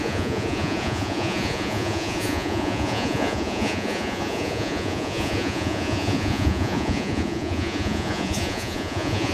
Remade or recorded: remade